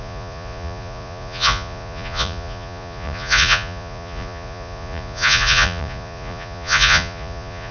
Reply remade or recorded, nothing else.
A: remade